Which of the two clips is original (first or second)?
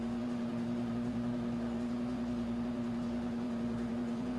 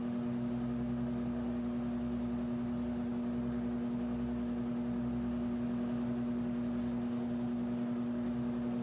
second